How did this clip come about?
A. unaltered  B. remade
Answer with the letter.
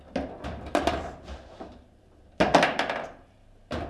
A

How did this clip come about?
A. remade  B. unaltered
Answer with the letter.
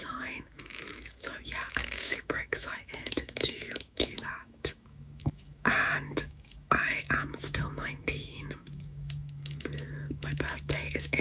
A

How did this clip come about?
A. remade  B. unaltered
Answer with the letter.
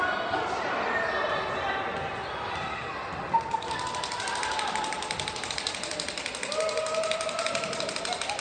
B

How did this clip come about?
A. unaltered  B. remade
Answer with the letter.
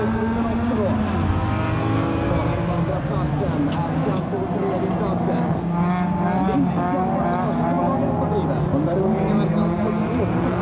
A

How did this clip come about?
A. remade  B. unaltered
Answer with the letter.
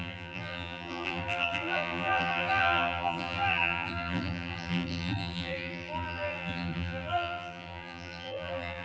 A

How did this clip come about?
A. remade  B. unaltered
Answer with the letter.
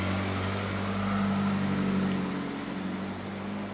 B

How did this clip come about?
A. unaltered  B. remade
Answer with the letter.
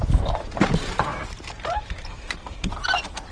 B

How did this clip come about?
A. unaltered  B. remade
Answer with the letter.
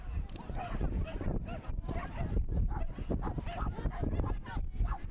A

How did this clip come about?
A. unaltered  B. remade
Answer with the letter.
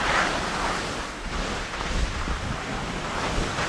A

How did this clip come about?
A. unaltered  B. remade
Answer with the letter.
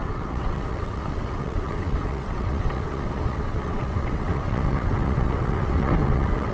B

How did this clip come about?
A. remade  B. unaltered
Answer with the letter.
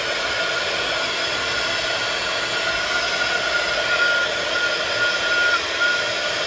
B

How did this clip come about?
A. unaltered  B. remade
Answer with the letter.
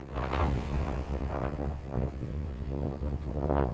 B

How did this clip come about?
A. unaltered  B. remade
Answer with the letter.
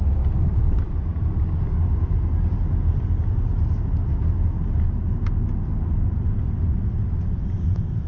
A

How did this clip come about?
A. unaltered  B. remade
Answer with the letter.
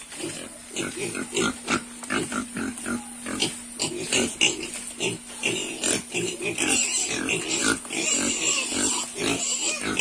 A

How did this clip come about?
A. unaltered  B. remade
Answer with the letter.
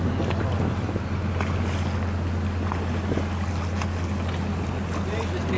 A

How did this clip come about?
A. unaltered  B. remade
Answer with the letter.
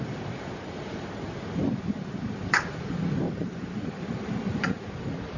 B